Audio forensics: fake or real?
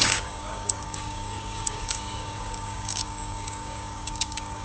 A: fake